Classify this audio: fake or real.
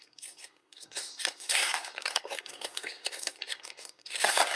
fake